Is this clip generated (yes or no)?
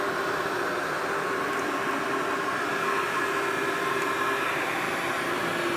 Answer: no